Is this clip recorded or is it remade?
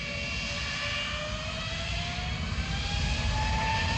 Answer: recorded